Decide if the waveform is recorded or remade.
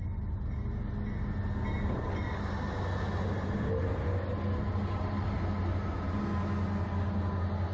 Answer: recorded